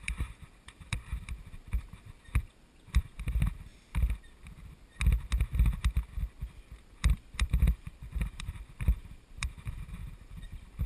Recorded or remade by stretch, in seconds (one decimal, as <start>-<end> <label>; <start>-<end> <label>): 0.0-1.1 remade; 1.1-2.4 recorded; 2.4-3.7 remade; 3.7-6.7 recorded; 6.7-10.9 remade